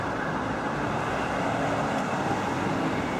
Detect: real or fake real